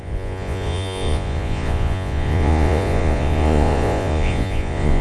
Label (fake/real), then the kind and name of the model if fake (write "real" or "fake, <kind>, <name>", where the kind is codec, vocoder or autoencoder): fake, vocoder, Vocos